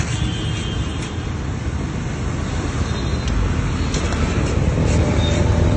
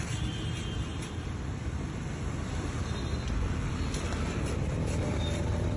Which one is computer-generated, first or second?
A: second